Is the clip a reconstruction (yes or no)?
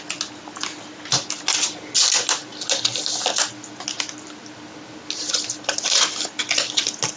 no